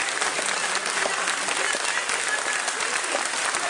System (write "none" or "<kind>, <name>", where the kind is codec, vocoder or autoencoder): none